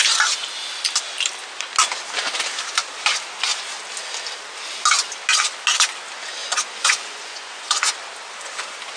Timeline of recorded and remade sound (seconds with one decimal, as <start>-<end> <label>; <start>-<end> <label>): 0.0-6.4 recorded; 6.4-7.9 remade; 7.9-9.0 recorded